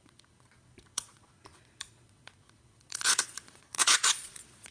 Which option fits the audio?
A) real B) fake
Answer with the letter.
B